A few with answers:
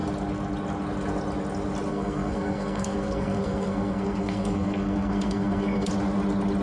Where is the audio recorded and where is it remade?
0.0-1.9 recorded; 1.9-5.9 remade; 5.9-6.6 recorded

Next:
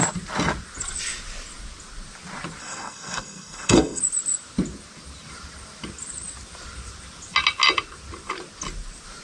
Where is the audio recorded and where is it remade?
0.0-2.6 recorded; 2.6-4.0 remade; 4.0-9.2 recorded

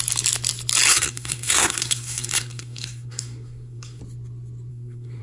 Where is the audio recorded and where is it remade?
0.0-0.9 recorded; 0.9-4.0 remade; 4.0-4.7 recorded; 4.7-5.2 remade

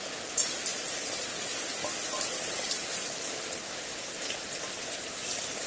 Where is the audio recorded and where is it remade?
0.0-5.7 recorded

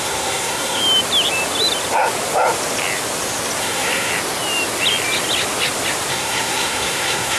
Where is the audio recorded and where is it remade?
0.0-0.8 remade; 0.8-3.6 recorded; 3.6-4.1 remade; 4.1-6.1 recorded; 6.1-7.4 remade

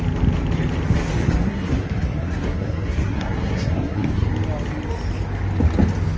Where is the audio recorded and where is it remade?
0.0-1.2 recorded; 1.2-4.3 remade; 4.3-6.2 recorded